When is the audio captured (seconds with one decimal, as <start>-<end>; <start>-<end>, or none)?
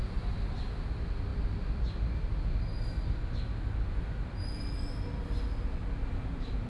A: 0.0-6.7